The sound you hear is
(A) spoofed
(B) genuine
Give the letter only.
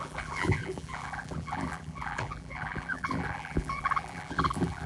A